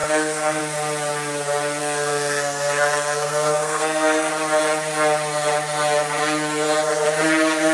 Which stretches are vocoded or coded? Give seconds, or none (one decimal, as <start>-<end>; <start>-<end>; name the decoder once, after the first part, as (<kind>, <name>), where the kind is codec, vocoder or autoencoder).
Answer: 0.0-0.6 (codec, SNAC); 1.8-4.3